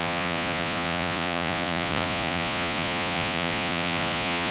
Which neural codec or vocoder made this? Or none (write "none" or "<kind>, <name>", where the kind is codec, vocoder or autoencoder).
vocoder, Vocos